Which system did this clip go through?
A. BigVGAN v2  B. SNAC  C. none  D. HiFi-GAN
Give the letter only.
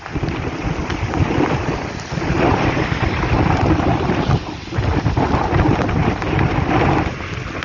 C